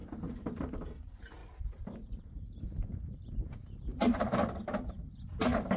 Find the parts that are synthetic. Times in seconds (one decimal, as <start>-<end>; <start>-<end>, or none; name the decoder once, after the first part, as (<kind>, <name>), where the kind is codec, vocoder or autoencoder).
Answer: 0.0-0.7 (vocoder, BigVGAN v2); 1.4-4.9